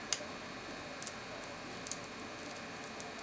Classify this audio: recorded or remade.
recorded